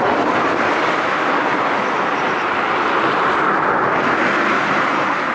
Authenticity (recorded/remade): recorded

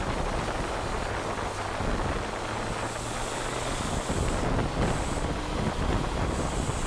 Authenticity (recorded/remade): recorded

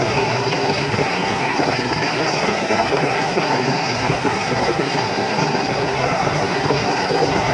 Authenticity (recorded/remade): remade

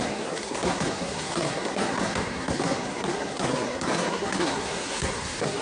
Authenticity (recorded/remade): remade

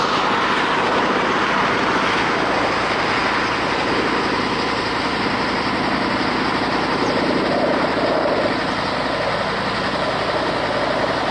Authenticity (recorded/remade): recorded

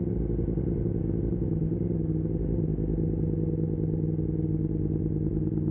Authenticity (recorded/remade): recorded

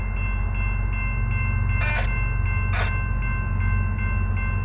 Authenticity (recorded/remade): recorded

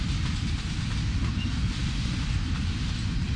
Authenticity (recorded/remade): recorded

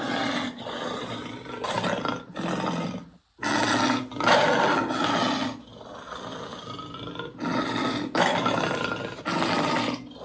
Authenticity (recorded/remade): recorded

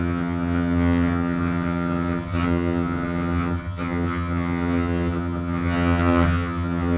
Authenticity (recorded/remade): remade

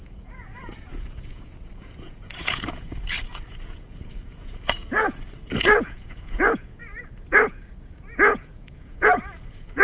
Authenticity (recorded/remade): remade